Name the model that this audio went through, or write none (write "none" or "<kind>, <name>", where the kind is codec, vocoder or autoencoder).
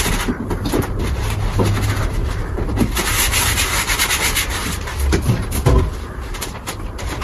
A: none